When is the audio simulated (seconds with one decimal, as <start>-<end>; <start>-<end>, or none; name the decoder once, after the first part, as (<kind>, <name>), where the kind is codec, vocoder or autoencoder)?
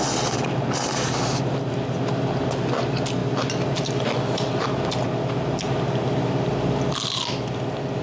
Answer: none